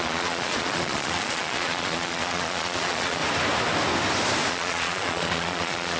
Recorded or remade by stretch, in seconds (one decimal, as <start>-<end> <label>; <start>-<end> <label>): 0.0-3.2 remade; 3.2-4.5 recorded; 4.5-6.0 remade